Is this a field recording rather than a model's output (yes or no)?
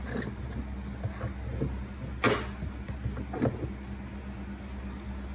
yes